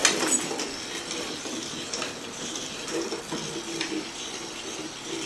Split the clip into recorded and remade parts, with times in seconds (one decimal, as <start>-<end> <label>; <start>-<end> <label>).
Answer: 0.0-5.3 recorded